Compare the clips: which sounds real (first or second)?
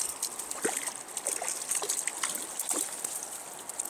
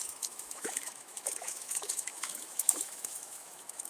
first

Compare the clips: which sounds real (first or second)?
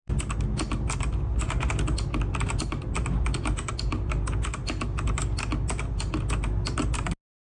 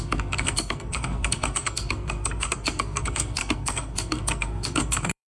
first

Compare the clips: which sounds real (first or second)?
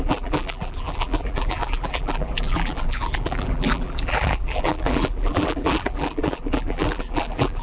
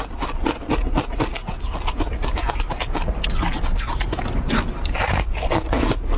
second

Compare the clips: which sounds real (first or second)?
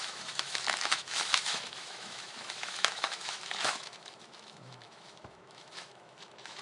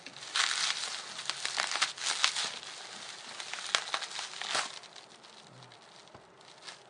second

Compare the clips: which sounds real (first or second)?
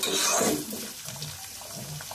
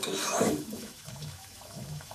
first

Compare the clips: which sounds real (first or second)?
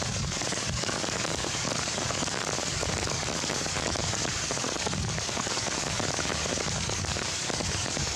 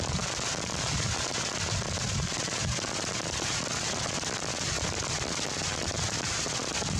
second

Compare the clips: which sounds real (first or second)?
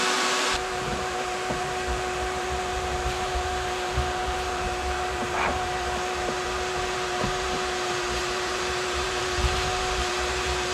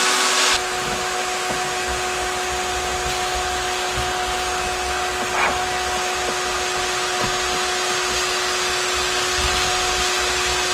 second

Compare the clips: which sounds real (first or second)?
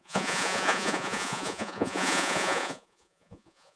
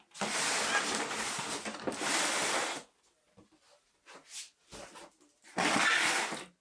second